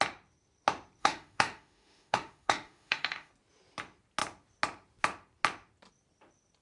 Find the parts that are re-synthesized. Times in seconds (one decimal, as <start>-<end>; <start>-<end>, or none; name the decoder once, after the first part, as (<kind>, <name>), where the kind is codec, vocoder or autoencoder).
1.0-3.3 (autoencoder, DAC-VAE)